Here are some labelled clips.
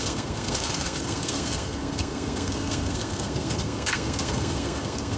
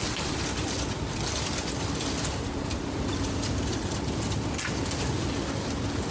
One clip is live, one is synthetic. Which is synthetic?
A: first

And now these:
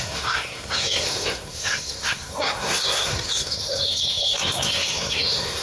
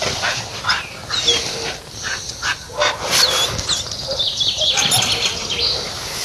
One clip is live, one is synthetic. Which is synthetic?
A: first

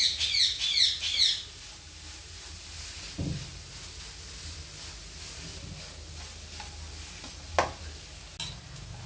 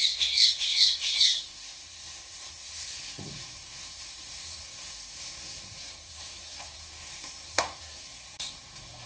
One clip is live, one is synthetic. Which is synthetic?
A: second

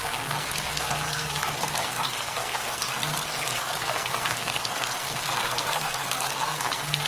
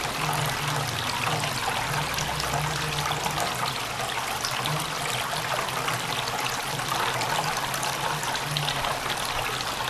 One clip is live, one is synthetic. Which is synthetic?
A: first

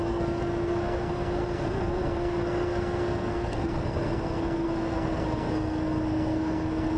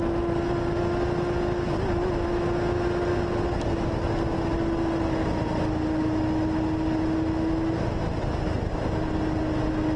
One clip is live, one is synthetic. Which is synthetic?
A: first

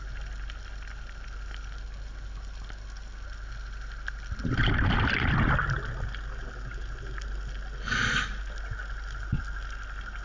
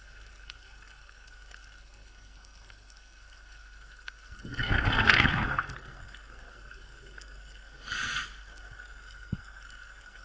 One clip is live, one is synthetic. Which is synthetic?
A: second